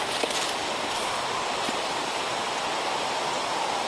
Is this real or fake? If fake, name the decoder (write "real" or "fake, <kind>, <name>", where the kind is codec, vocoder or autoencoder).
real